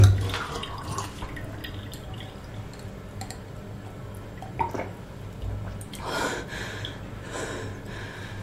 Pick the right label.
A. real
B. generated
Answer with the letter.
A